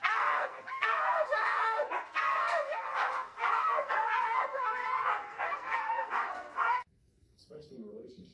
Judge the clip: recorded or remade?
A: remade